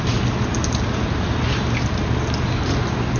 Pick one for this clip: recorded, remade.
recorded